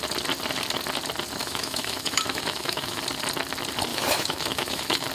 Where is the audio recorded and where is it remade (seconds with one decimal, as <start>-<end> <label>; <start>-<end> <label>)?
0.0-1.4 recorded; 1.4-3.0 remade; 3.0-3.9 recorded; 3.9-5.1 remade